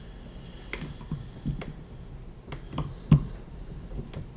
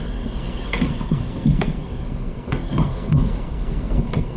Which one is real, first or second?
first